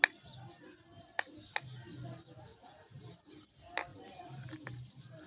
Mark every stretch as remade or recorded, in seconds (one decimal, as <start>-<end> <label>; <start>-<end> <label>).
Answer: 0.0-2.5 recorded; 2.5-3.1 remade; 3.1-3.9 recorded; 3.9-5.3 remade